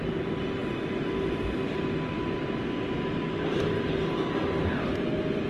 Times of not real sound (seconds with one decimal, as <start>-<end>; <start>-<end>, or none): none